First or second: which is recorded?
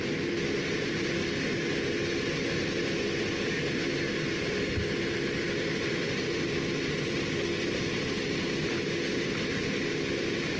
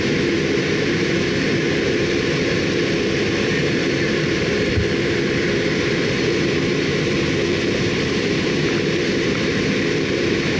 first